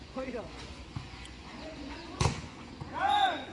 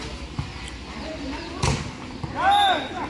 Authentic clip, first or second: second